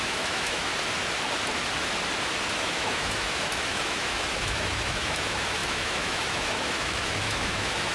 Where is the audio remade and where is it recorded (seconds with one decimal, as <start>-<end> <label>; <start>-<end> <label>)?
0.0-0.7 remade; 0.7-2.5 recorded; 2.5-7.9 remade